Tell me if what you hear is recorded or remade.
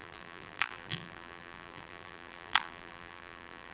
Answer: remade